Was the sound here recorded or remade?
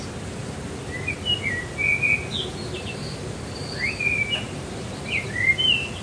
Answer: recorded